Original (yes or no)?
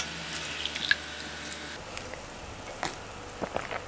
yes